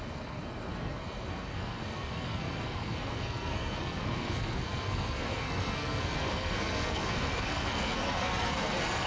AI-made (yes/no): yes